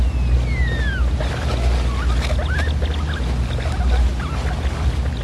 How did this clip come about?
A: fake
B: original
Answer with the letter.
B